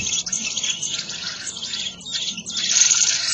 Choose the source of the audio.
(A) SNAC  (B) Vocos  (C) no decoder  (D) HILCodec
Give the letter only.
C